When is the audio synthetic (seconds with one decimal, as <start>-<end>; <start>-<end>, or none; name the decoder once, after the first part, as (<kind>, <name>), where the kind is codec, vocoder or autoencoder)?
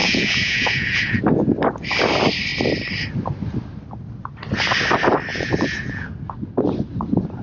0.0-1.2 (vocoder, Vocos); 5.3-6.1